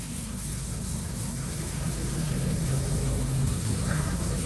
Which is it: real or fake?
fake